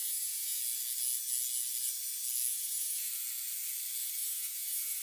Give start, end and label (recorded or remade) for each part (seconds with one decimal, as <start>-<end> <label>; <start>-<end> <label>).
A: 0.0-0.6 remade; 0.6-2.5 recorded; 2.5-3.1 remade; 3.1-4.2 recorded; 4.2-5.0 remade